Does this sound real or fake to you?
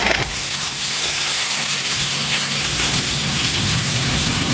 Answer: fake